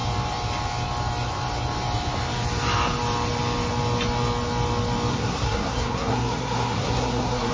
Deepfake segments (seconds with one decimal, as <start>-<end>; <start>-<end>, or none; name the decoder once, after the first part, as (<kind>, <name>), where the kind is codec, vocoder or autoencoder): 5.1-7.5 (codec, SNAC)